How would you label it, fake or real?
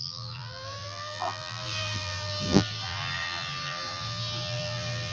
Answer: fake